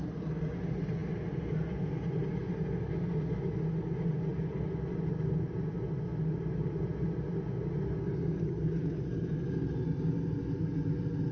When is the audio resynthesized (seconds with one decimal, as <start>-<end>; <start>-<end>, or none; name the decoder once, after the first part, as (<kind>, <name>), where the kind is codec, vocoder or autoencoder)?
none